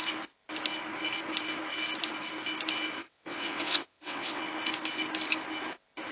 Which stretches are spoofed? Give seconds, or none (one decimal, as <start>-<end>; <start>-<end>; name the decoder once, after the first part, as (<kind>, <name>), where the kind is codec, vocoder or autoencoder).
3.0-4.4 (vocoder, WaveNeXt)